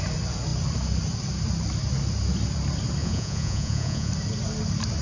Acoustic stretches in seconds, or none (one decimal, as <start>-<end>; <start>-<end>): 0.0-3.0; 4.1-5.0